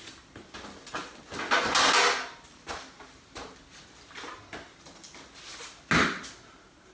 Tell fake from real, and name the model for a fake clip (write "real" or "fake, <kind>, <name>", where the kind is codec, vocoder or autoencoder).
real